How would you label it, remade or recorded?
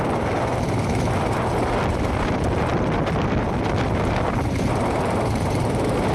remade